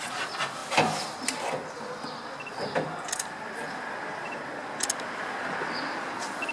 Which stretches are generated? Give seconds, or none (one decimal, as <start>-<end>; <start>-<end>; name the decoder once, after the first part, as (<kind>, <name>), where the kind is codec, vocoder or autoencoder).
none